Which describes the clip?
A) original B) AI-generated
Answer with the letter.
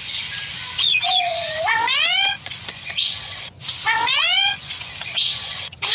B